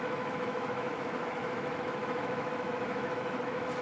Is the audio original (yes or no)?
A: no